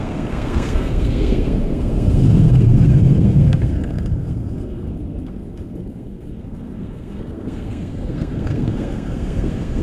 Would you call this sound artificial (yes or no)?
yes